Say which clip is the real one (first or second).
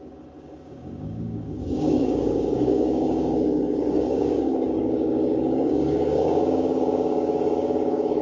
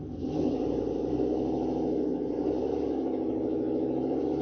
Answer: second